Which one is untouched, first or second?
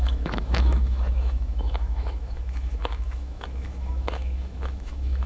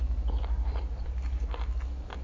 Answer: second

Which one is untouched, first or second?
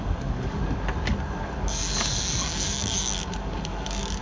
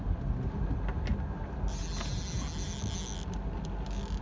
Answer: second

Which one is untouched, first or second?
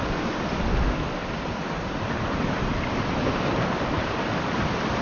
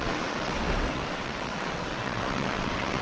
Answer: first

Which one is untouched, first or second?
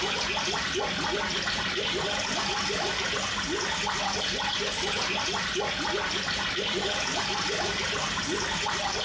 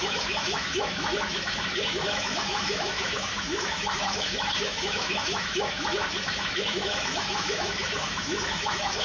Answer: first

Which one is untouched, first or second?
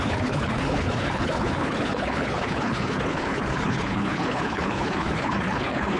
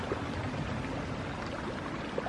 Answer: second